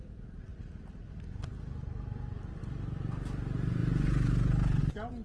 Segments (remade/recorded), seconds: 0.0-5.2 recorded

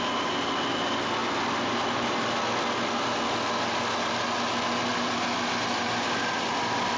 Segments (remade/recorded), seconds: 0.0-7.0 recorded

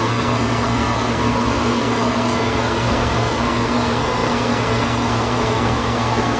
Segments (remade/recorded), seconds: 0.0-6.4 remade

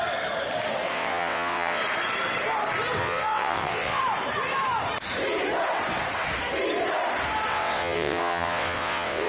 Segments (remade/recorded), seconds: 0.0-0.9 recorded; 0.9-1.8 remade; 1.8-3.0 recorded; 3.0-4.0 remade; 4.0-7.5 recorded; 7.5-9.3 remade

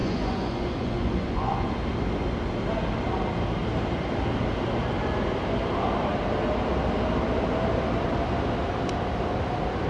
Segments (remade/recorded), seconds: 0.0-1.7 remade; 1.7-9.9 recorded

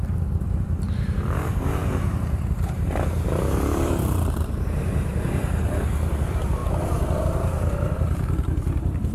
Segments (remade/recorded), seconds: 0.0-6.6 remade; 6.6-7.2 recorded; 7.2-9.1 remade